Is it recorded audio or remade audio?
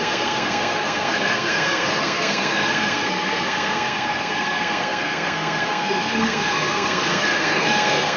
remade